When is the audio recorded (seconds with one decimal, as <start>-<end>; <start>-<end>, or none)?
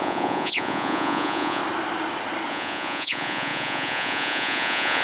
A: 1.6-2.5